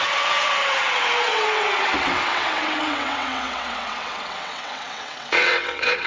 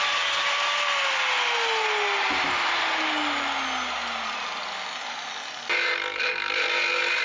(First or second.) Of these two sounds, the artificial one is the first